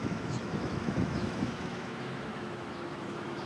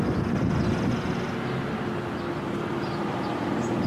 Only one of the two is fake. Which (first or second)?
first